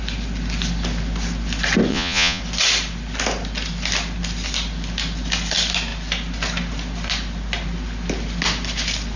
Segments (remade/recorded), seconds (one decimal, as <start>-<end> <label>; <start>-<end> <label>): 0.0-1.9 recorded; 1.9-2.4 remade; 2.4-9.2 recorded